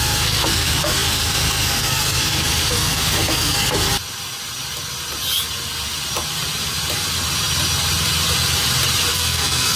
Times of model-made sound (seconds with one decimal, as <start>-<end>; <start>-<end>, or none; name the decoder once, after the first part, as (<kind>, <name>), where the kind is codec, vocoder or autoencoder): 0.0-3.9 (codec, SNAC); 9.1-9.8